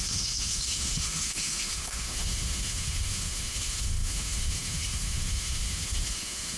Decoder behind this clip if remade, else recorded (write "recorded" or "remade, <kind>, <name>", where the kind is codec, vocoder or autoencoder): remade, autoencoder, DAC-VAE